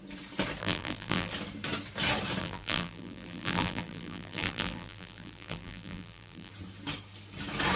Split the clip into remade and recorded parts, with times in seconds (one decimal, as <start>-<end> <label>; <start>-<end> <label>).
0.0-0.6 recorded; 0.6-1.3 remade; 1.3-2.4 recorded; 2.4-6.5 remade; 6.5-7.8 recorded